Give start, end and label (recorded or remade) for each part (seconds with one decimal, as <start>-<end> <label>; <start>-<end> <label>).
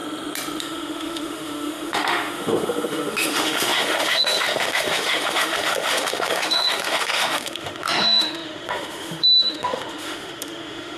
0.0-0.6 recorded; 0.6-11.0 remade